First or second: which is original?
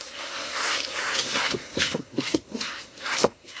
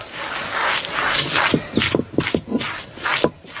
second